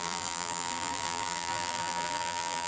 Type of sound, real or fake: fake